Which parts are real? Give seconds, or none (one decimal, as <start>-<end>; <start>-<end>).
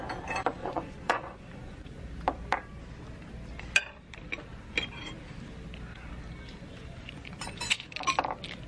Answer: 0.0-0.6; 2.0-6.7; 7.9-8.7